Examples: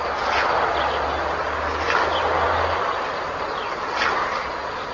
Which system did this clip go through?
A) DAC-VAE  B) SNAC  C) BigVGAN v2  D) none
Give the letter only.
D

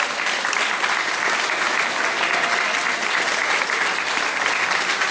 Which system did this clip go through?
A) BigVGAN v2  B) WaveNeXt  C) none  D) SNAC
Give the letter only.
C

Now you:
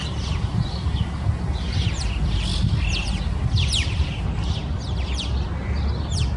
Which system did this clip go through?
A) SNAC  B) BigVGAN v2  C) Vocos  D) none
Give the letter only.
B